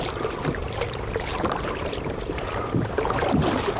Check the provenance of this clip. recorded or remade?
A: remade